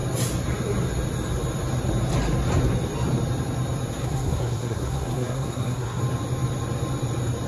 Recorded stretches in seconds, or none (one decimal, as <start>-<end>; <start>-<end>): 0.0-4.0; 6.0-7.5